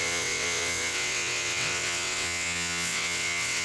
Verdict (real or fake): fake